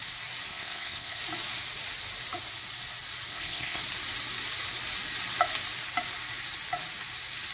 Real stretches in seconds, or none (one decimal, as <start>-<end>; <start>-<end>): 0.0-0.5; 1.2-3.3; 3.8-7.5